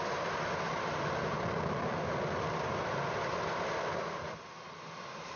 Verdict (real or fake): real